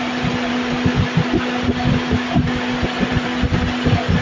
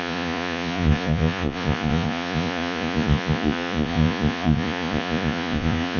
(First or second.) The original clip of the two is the first